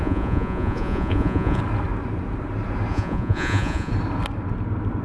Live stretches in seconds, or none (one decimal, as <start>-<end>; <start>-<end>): 1.6-2.9; 3.9-5.0